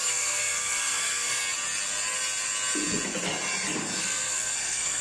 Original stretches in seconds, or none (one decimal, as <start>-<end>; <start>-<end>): 1.4-4.0